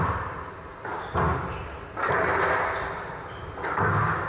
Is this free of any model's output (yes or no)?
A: yes